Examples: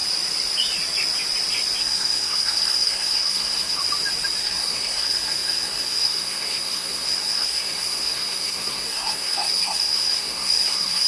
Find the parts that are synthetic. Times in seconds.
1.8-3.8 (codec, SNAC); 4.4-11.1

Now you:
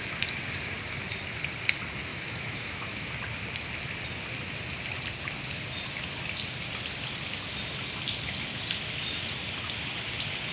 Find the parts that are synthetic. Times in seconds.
2.1-3.1 (autoencoder, DAC-VAE)